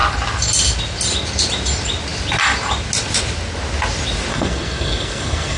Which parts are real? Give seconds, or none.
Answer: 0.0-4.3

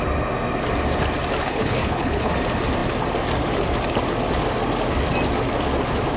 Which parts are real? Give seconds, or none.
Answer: 0.0-1.4; 2.3-6.2

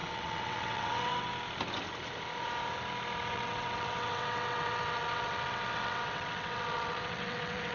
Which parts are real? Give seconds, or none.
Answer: 1.3-3.3

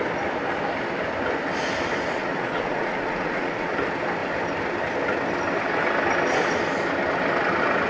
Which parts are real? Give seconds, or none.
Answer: 0.0-2.2; 3.7-7.9

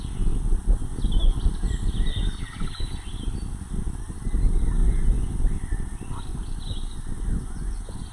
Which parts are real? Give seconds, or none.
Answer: 0.0-4.8; 5.4-6.3

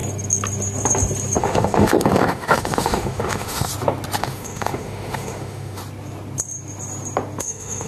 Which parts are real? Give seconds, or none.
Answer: 0.0-1.4; 3.7-4.2; 5.8-7.4